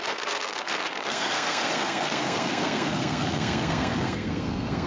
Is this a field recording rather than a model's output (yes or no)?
no